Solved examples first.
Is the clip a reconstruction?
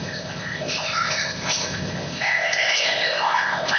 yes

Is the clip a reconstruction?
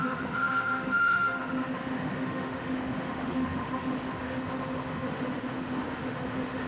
yes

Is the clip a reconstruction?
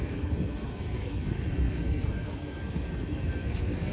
yes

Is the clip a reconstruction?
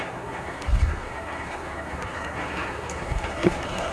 yes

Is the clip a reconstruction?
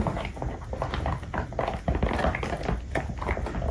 no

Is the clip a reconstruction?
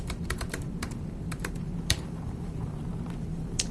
yes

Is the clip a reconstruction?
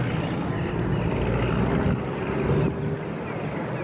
no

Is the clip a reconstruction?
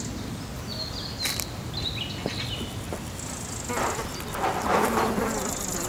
no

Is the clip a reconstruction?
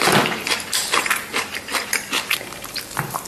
yes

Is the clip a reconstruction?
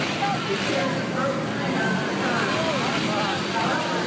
no